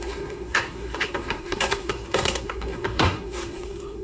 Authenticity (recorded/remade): remade